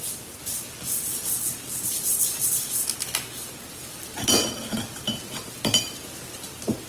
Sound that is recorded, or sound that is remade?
recorded